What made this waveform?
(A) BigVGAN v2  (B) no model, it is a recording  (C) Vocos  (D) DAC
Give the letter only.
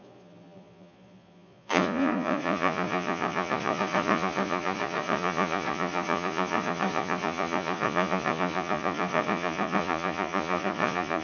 C